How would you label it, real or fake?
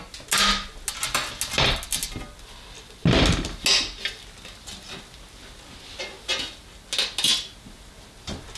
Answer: real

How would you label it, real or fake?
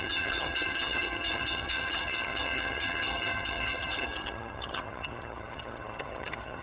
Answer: fake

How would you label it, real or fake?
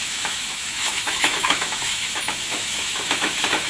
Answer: fake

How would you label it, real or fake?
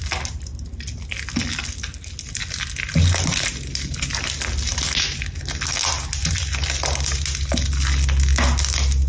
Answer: real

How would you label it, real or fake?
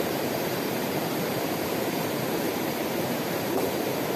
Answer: fake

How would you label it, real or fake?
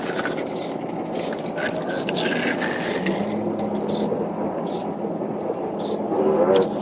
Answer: real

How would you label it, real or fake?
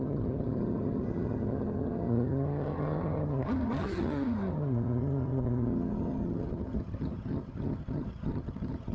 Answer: fake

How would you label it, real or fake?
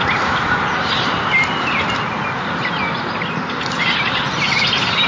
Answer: real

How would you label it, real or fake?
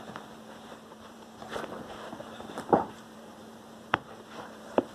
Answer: fake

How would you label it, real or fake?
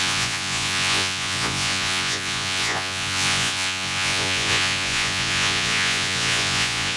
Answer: fake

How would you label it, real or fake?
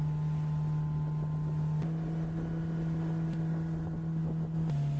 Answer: real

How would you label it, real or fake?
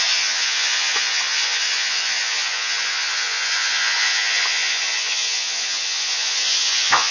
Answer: fake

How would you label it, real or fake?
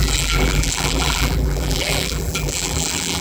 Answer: fake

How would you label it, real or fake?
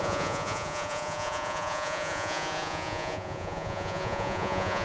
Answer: fake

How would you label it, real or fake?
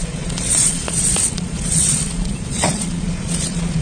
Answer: fake